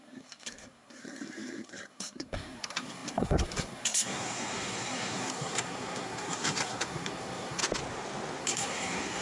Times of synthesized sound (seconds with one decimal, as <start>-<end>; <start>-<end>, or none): 0.0-7.6; 8.4-9.2